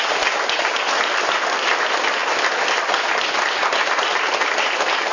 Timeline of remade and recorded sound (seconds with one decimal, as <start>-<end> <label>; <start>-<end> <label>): 0.0-5.1 recorded